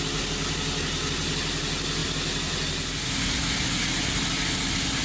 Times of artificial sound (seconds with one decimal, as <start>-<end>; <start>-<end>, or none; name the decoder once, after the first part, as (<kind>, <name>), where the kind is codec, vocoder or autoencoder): none